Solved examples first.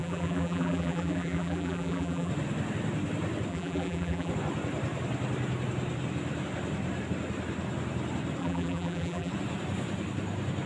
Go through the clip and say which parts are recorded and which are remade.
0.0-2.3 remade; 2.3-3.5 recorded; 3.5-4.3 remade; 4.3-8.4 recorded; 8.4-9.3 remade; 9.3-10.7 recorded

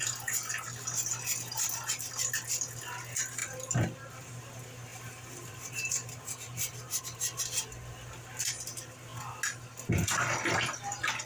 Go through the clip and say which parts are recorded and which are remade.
0.0-3.4 recorded; 3.4-4.5 remade; 4.5-4.9 recorded; 4.9-7.0 remade; 7.0-11.3 recorded